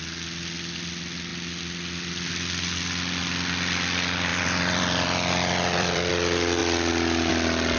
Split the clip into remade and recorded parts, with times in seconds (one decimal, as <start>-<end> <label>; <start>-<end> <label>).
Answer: 0.0-4.3 recorded; 4.3-6.1 remade; 6.1-7.8 recorded

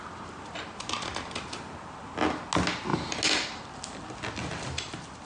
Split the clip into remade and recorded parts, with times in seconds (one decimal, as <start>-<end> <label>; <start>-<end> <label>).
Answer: 0.0-5.3 recorded

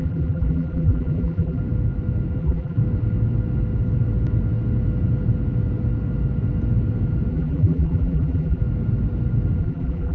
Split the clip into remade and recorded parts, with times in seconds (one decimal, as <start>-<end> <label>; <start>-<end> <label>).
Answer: 0.0-1.6 remade; 1.6-2.4 recorded; 2.4-2.8 remade; 2.8-7.3 recorded; 7.3-8.6 remade; 8.6-9.6 recorded; 9.6-10.1 remade